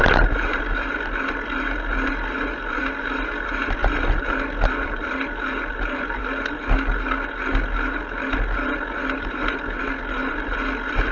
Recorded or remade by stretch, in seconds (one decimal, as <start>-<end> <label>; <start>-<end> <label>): 0.0-11.1 recorded